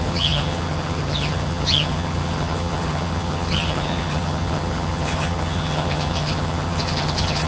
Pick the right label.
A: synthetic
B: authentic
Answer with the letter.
A